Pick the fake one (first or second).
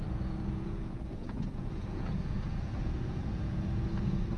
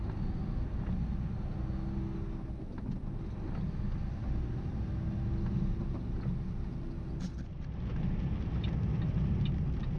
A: first